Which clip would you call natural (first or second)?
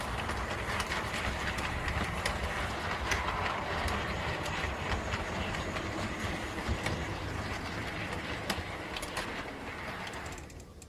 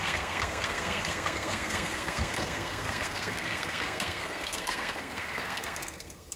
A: first